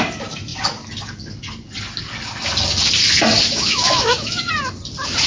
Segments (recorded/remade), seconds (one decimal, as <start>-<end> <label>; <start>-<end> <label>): 0.0-3.5 recorded; 3.5-4.5 remade; 4.5-5.3 recorded

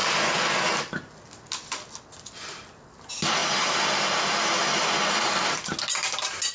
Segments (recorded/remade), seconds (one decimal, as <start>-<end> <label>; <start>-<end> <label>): 0.0-6.5 recorded

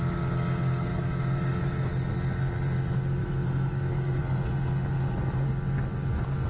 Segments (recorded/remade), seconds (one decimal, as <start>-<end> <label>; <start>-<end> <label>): 0.0-0.9 recorded; 0.9-1.9 remade; 1.9-3.2 recorded; 3.2-4.2 remade; 4.2-6.5 recorded

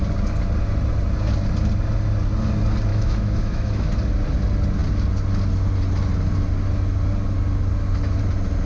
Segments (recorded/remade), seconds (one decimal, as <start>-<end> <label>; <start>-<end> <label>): 0.0-2.9 recorded; 2.9-3.9 remade; 3.9-8.7 recorded

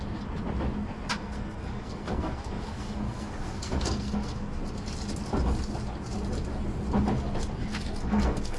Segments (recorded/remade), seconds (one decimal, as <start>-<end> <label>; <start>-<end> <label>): 0.0-1.1 recorded; 1.1-4.6 remade; 4.6-7.7 recorded; 7.7-8.6 remade

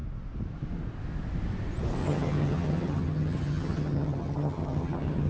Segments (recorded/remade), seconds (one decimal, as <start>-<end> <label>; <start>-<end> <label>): 0.0-2.0 recorded; 2.0-5.3 remade

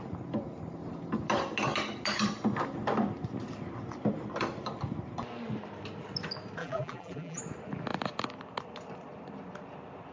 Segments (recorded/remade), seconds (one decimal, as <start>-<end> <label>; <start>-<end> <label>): 0.0-6.6 recorded; 6.6-7.4 remade; 7.4-10.1 recorded